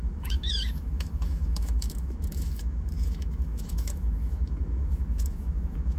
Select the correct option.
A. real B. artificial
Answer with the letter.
B